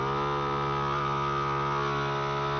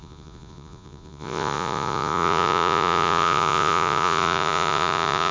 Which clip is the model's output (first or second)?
second